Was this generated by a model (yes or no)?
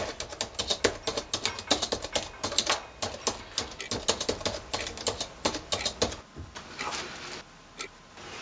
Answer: no